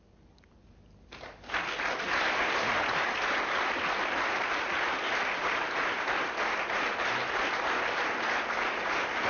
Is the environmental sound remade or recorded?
recorded